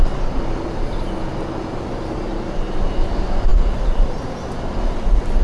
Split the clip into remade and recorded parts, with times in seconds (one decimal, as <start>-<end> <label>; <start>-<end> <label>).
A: 0.0-5.4 recorded